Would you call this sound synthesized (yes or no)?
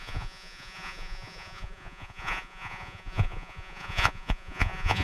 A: yes